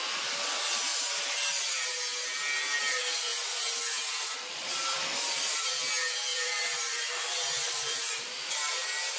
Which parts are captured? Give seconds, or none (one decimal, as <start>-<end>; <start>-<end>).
0.0-3.3; 5.7-6.3